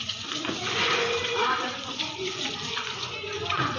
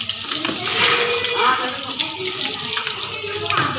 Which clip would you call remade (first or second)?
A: first